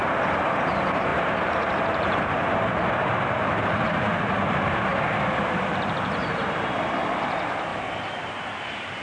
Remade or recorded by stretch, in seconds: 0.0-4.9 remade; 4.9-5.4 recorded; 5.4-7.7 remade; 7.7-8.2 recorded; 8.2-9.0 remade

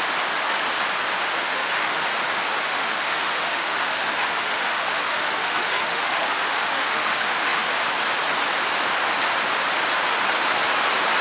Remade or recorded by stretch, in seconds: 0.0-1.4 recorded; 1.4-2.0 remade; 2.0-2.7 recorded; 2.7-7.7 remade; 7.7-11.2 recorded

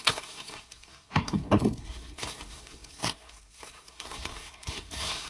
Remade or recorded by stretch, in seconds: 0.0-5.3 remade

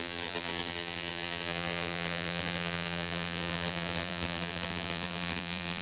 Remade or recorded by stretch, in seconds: 0.0-5.8 remade

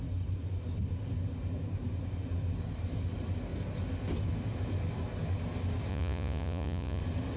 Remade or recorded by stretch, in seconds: 0.0-5.9 recorded; 5.9-7.0 remade; 7.0-7.4 recorded

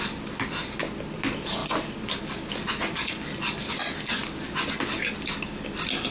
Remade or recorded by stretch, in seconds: 0.0-6.1 recorded

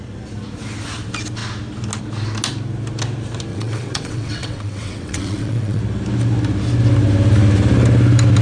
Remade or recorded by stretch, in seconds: 0.0-3.5 recorded; 3.5-5.8 remade; 5.8-8.4 recorded